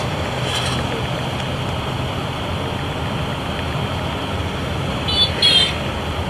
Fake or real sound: real